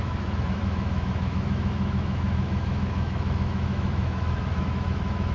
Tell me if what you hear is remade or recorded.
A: remade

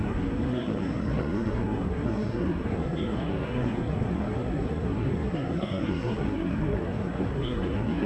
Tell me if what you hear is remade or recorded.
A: remade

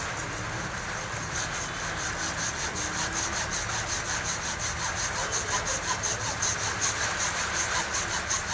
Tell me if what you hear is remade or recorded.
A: recorded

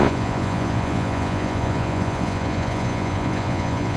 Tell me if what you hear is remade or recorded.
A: remade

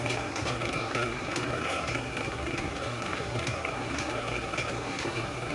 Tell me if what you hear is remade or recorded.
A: remade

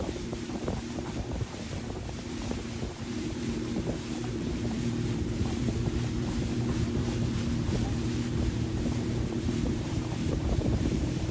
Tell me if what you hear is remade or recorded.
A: remade